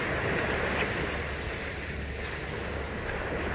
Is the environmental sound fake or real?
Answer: real